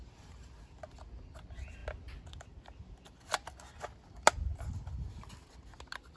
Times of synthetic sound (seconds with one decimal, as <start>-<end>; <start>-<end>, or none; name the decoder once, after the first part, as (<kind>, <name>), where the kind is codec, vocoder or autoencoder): 0.0-0.5 (vocoder, BigVGAN v2)